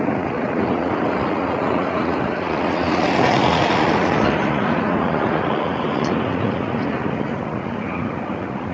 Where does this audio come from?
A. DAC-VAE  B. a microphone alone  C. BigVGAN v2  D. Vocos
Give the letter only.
D